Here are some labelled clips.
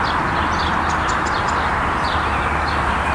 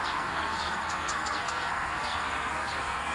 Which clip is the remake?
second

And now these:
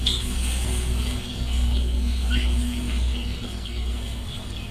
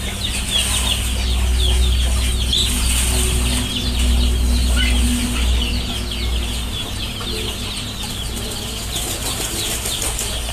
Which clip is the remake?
first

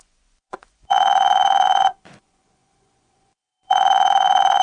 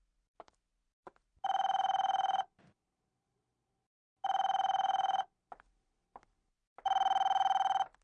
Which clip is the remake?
first